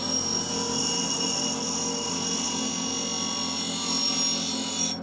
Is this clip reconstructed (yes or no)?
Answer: no